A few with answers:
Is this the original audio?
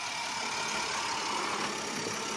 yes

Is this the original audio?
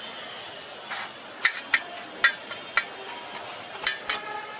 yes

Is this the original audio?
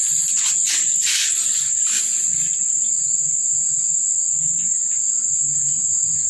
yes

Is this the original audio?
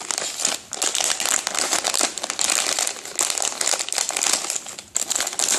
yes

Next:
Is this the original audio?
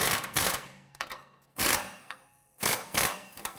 no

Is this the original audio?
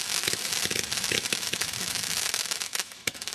no